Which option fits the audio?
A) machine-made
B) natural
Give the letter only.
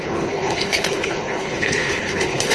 A